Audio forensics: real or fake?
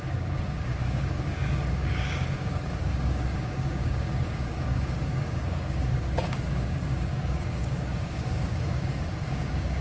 fake